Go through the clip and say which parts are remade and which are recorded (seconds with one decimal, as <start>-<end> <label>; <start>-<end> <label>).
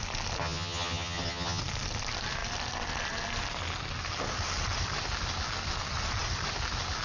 0.0-0.4 recorded; 0.4-1.6 remade; 1.6-7.0 recorded